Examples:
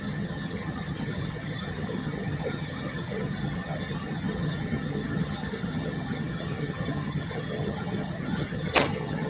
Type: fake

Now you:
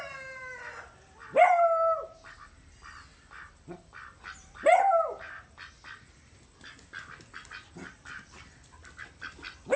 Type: real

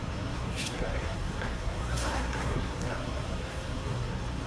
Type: fake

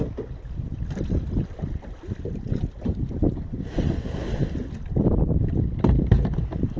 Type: fake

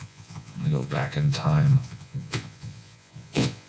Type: fake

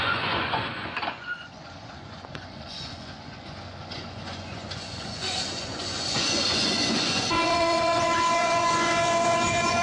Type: fake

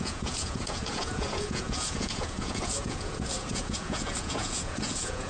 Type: fake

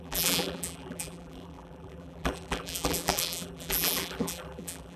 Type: fake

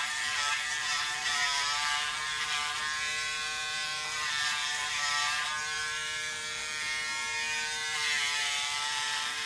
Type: fake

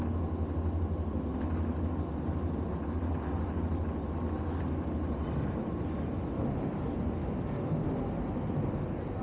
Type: real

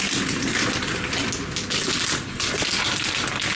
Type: real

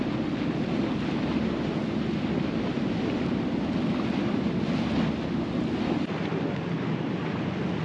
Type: real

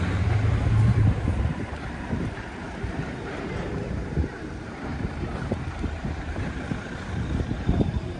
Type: fake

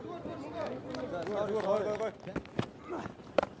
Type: real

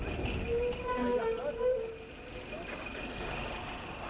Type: real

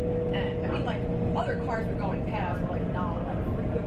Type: real